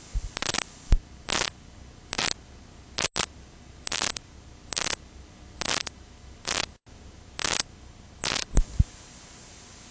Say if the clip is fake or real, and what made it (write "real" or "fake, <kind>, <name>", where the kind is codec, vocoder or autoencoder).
real